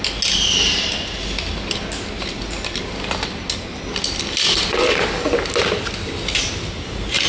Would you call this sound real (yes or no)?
yes